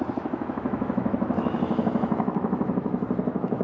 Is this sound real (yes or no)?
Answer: no